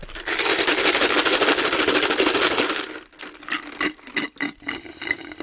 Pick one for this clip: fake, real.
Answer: real